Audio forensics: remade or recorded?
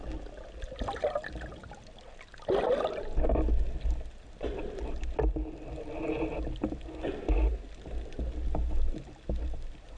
recorded